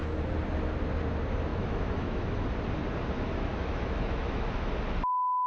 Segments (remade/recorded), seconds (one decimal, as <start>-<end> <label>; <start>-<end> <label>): 0.0-1.5 recorded; 1.5-2.4 remade; 2.4-3.5 recorded; 3.5-4.7 remade; 4.7-5.5 recorded